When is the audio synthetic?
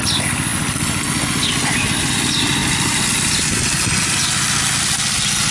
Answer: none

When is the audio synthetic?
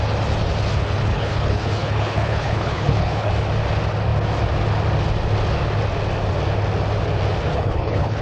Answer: 1.1-3.3 (codec, HILCodec); 7.5-8.2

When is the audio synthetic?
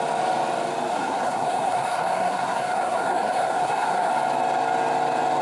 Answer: 0.9-4.1 (codec, SNAC)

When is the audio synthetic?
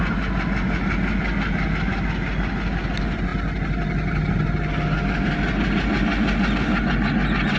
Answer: none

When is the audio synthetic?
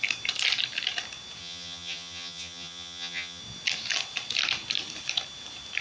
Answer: 1.4-3.4 (vocoder, HiFi-GAN)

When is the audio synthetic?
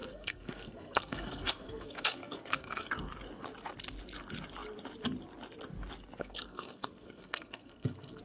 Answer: 0.0-2.9 (codec, SNAC); 6.2-8.2